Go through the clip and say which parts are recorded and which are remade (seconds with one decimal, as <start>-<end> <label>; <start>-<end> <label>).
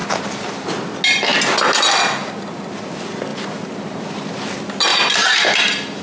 0.0-0.7 remade; 0.7-3.3 recorded; 3.3-4.3 remade; 4.3-4.9 recorded; 4.9-6.0 remade